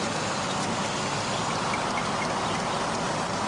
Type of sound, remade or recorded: recorded